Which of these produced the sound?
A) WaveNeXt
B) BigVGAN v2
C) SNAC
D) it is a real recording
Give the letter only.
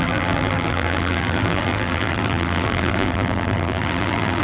B